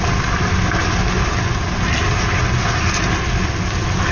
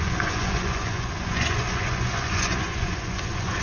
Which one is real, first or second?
first